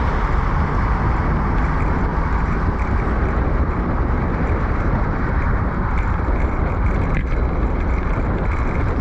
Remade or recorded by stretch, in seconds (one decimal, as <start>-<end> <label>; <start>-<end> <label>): 0.0-2.1 recorded; 2.1-7.3 remade; 7.3-9.0 recorded